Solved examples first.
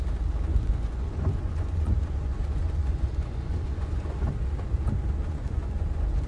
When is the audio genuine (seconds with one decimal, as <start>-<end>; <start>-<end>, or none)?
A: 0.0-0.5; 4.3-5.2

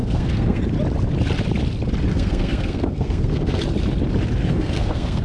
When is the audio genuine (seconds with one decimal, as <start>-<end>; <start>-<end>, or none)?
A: 0.6-2.1; 3.6-4.4

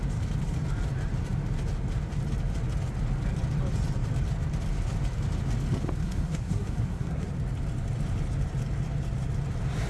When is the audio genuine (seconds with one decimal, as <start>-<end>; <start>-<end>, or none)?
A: 0.0-6.0; 7.3-9.9

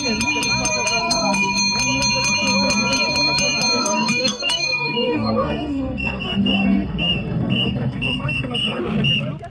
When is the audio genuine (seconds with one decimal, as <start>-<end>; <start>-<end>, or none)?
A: 0.0-1.0; 1.6-3.8; 8.8-9.5

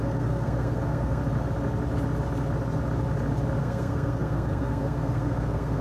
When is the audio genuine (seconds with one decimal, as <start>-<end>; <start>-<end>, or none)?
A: 1.2-3.6

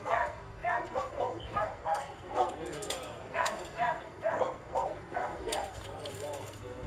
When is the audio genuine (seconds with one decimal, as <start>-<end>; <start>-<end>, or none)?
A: none